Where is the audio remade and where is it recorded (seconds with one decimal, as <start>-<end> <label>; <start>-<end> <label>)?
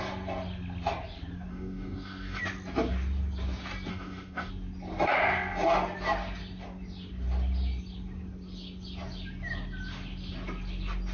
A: 0.0-1.5 recorded; 1.5-2.4 remade; 2.4-3.9 recorded; 3.9-4.5 remade; 4.5-11.1 recorded